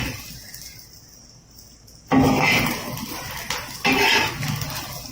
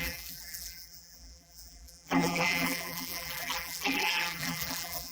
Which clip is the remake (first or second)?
second